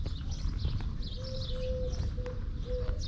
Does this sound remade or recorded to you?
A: recorded